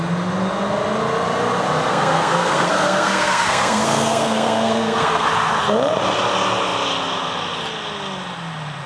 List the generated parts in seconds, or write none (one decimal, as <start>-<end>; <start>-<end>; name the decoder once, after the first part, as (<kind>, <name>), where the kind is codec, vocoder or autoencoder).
1.9-5.3 (codec, SNAC)